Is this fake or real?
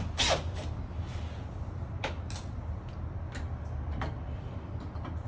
real